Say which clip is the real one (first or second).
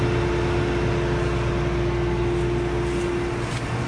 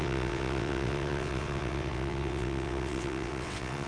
first